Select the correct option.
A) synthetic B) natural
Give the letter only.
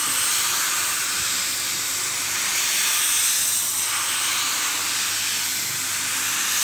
B